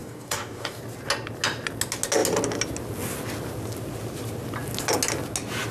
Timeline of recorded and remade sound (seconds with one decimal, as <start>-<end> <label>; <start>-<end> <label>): 0.0-0.8 remade; 0.8-5.7 recorded